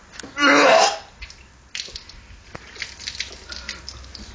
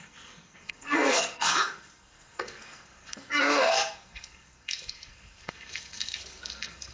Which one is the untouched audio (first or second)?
first